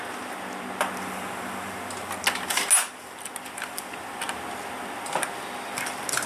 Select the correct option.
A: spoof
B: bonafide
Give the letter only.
B